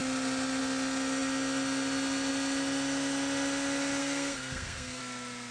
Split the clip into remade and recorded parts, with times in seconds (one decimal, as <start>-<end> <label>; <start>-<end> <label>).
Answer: 0.0-4.0 recorded; 4.0-5.0 remade; 5.0-5.5 recorded